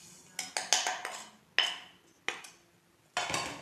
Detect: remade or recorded recorded